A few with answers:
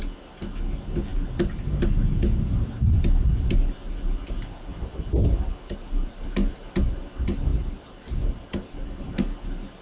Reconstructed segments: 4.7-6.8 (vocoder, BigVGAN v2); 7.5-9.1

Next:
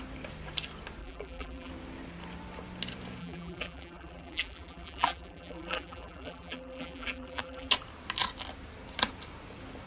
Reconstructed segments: 1.0-1.7 (vocoder, BigVGAN v2); 3.2-7.7

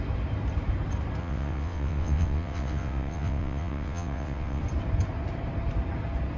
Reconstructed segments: 1.2-4.6 (vocoder, WaveNeXt)

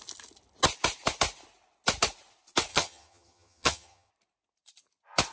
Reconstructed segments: 2.7-4.1 (vocoder, HiFi-GAN)

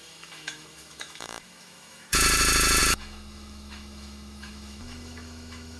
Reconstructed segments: 0.0-5.8 (autoencoder, DAC-VAE)